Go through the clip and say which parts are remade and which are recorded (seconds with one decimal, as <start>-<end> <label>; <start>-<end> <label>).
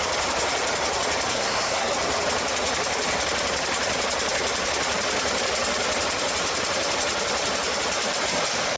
0.0-1.3 recorded; 1.3-1.9 remade; 1.9-8.8 recorded